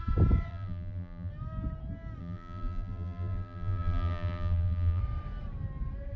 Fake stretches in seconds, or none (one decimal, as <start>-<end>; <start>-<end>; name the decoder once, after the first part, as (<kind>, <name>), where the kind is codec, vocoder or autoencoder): 0.5-1.3 (vocoder, BigVGAN v2); 2.2-5.0